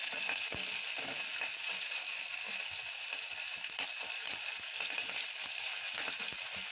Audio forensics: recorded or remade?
recorded